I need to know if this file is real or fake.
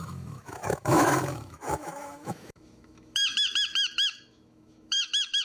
fake